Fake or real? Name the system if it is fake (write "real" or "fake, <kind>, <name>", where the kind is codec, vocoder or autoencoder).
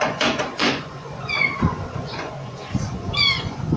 fake, vocoder, Vocos